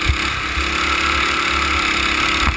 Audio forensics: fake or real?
real